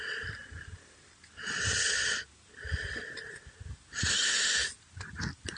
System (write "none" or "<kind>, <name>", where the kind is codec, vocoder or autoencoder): none